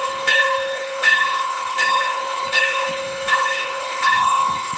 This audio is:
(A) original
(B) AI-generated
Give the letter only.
B